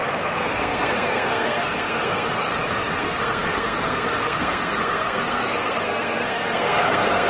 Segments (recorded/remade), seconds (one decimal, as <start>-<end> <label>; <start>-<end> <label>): 0.0-2.5 remade; 2.5-3.0 recorded; 3.0-7.3 remade